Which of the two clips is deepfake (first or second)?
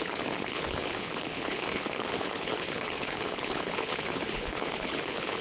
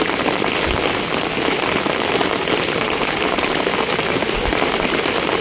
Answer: first